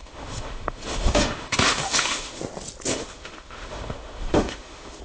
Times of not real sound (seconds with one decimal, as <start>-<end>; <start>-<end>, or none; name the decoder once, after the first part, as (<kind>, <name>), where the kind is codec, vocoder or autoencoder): 0.0-2.4 (autoencoder, DAC-VAE); 2.9-5.0